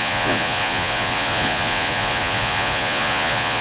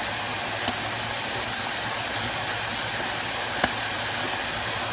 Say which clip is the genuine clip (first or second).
second